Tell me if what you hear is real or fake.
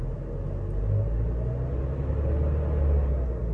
real